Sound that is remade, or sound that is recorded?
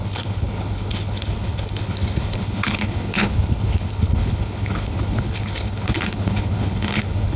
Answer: remade